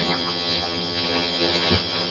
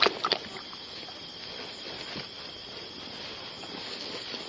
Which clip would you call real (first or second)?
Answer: second